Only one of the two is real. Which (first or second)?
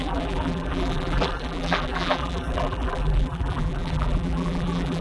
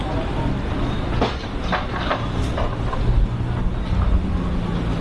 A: second